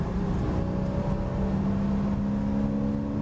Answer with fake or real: real